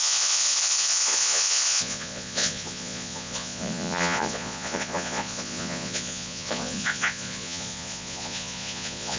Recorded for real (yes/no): no